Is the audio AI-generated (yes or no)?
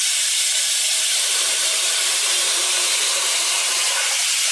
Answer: yes